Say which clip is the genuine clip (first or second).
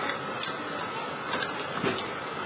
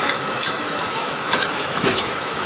first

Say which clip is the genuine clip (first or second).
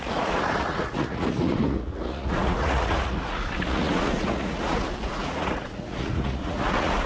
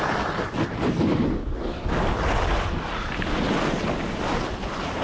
second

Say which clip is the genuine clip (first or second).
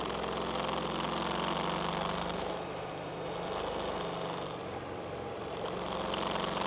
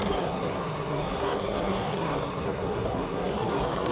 first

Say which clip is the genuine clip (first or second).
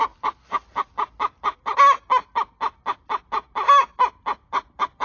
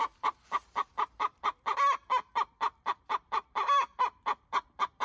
first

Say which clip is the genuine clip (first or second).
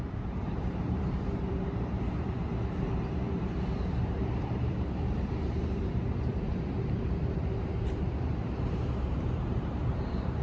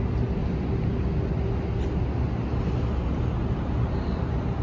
second